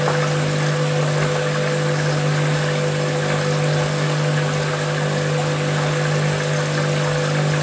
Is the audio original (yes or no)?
yes